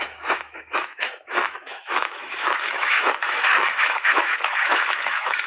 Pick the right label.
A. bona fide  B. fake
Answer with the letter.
B